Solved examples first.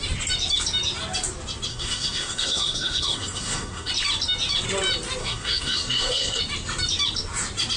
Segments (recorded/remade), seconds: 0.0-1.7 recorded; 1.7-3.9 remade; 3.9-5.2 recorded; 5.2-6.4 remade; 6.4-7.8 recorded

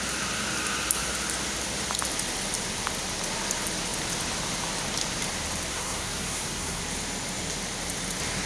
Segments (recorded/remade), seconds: 0.0-5.7 recorded; 5.7-6.8 remade; 6.8-8.5 recorded

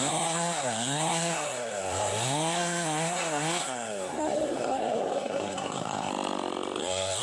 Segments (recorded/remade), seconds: 0.0-6.1 remade; 6.1-6.8 recorded; 6.8-7.2 remade

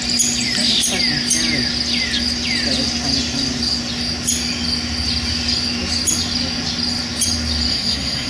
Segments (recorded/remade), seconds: 0.0-7.7 recorded; 7.7-8.3 remade

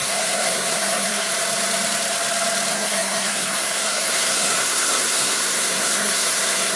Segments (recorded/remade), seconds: 0.0-1.3 remade; 1.3-2.7 recorded; 2.7-6.8 remade